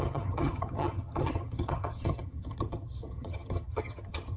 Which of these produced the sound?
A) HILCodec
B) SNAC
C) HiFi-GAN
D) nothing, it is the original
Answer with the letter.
C